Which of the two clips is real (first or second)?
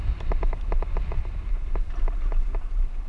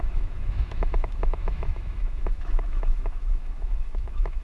first